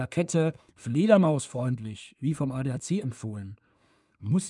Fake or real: fake